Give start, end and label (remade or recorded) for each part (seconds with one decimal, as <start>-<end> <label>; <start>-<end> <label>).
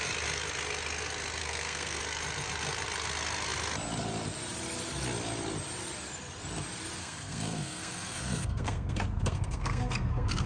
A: 0.0-1.4 recorded; 1.4-2.0 remade; 2.0-7.0 recorded; 7.0-10.5 remade